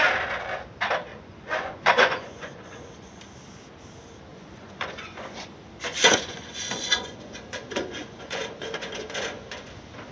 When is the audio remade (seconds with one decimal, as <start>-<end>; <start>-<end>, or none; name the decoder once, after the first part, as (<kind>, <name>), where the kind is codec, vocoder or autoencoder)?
1.1-3.2 (vocoder, Vocos); 4.3-5.5; 5.9-9.7